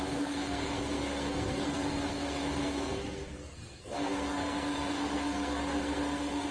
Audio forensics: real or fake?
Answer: fake